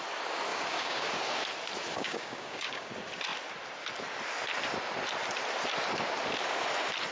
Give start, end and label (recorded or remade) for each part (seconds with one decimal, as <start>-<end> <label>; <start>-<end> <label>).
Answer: 0.0-0.5 recorded; 0.5-1.1 remade; 1.1-1.9 recorded; 1.9-2.9 remade; 2.9-7.1 recorded